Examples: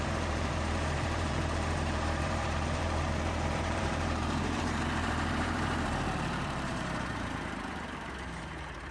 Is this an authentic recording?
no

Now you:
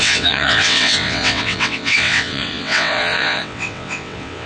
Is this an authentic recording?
no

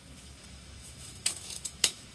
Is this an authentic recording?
no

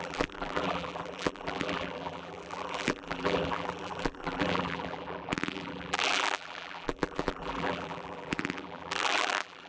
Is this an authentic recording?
no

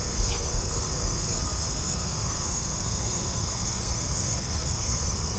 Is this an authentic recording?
no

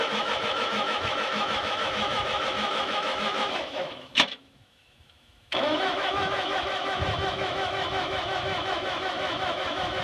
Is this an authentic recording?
no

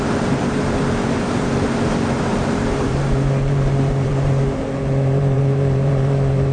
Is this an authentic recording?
no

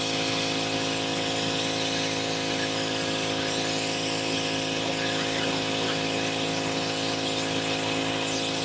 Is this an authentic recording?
yes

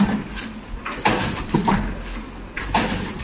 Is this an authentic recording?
yes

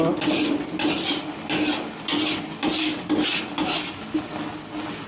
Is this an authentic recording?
yes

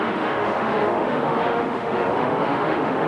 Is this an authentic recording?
no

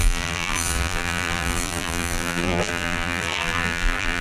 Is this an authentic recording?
no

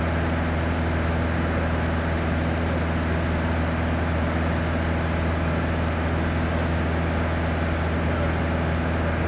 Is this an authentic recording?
yes